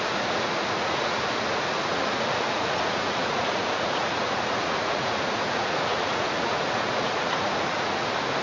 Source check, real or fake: fake